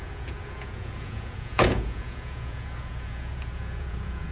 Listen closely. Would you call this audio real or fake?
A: fake